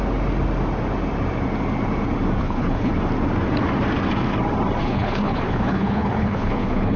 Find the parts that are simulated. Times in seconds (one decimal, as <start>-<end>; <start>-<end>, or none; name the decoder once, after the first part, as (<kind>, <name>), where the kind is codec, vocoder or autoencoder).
2.4-2.9 (codec, HILCodec); 4.8-7.0